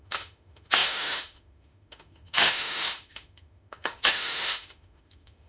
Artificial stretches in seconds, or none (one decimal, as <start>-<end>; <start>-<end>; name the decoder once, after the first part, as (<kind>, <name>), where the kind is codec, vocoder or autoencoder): 0.0-5.5 (autoencoder, DAC-VAE)